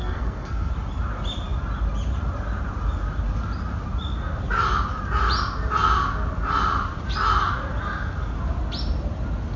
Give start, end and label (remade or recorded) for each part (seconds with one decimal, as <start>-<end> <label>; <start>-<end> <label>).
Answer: 0.0-0.7 remade; 0.7-9.6 recorded